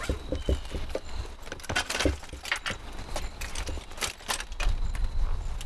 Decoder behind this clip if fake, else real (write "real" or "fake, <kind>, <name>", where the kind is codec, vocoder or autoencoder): real